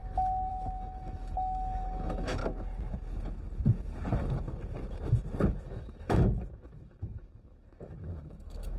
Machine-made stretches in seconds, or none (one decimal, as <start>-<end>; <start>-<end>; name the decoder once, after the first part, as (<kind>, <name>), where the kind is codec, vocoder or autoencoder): 0.0-2.4 (autoencoder, DAC-VAE); 5.6-8.8